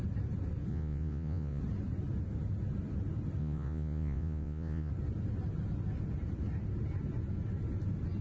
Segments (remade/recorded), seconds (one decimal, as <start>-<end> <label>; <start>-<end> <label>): 0.0-0.7 recorded; 0.7-1.6 remade; 1.6-3.4 recorded; 3.4-4.9 remade; 4.9-8.2 recorded